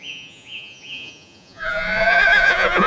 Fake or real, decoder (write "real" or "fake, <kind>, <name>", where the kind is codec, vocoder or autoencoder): fake, vocoder, Vocos